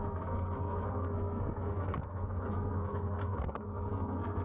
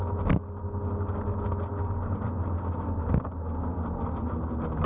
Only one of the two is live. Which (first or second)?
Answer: second